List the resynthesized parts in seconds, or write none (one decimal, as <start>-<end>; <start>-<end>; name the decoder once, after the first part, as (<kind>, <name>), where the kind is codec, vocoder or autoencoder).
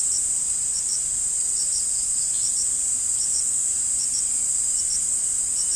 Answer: none